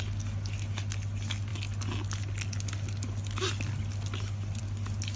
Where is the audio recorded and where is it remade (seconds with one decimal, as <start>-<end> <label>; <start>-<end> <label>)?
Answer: 0.0-5.2 recorded